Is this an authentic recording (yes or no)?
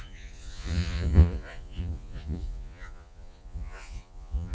no